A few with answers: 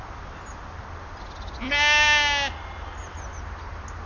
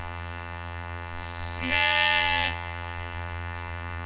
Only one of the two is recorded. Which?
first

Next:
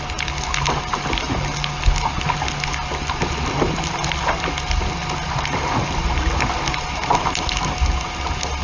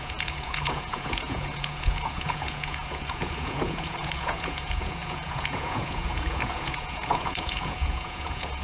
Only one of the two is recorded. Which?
first